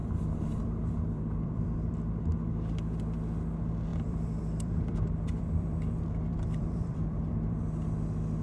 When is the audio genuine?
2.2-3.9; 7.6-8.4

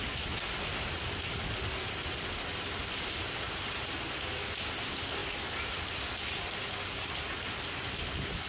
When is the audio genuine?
0.0-8.5

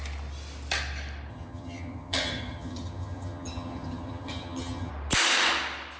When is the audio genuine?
0.0-1.3; 4.9-6.0

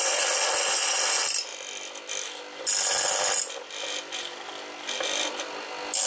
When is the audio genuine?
0.0-6.1

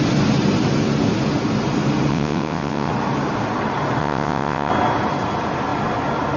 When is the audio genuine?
0.0-2.1; 2.9-4.0; 4.7-6.4